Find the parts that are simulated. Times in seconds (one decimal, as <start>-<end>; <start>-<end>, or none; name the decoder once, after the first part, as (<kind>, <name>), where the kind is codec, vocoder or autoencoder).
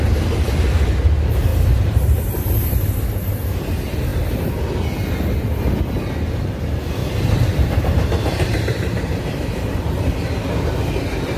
1.5-3.0 (vocoder, BigVGAN v2); 7.0-10.0